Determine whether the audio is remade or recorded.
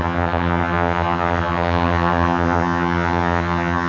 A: remade